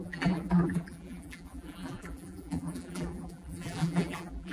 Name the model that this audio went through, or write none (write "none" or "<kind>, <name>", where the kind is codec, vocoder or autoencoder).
vocoder, BigVGAN v2